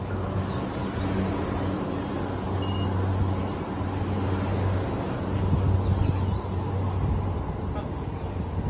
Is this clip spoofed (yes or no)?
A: no